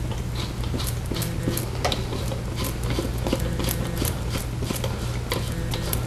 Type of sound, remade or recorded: recorded